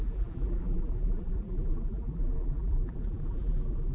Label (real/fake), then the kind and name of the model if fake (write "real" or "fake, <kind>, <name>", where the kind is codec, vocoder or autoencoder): fake, vocoder, BigVGAN v2